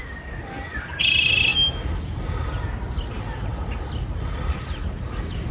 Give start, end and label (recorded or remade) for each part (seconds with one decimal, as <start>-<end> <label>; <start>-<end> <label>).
0.0-5.5 recorded